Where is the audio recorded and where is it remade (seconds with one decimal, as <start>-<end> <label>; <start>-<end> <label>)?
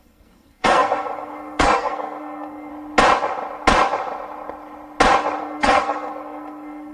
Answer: 0.0-2.7 remade; 2.7-5.4 recorded; 5.4-6.9 remade